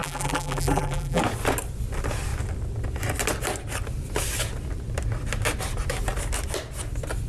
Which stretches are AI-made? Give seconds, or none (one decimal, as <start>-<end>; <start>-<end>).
0.0-1.2